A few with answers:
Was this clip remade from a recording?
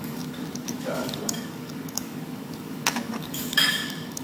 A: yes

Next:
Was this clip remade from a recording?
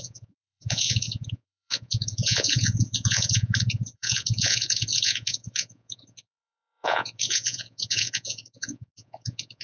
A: yes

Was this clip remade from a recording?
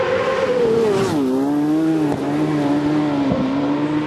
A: no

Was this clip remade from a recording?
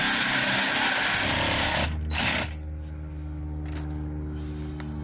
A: no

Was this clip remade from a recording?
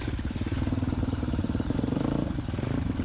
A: yes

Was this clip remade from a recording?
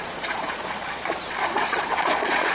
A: yes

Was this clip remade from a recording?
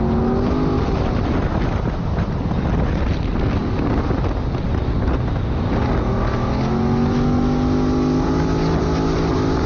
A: no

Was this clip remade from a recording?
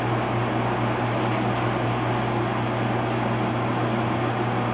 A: no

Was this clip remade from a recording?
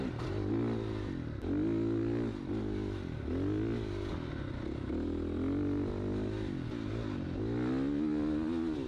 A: no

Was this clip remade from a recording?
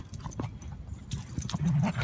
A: no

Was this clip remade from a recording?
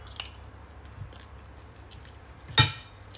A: no